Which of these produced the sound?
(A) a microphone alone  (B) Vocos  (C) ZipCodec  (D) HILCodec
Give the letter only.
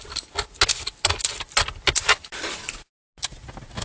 A